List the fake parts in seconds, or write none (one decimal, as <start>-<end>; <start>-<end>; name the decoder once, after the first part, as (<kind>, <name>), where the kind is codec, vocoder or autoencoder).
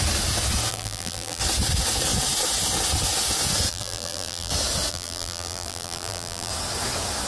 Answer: 0.7-1.4 (vocoder, BigVGAN v2); 3.7-4.5; 4.9-6.5